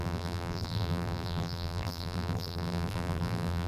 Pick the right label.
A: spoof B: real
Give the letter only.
A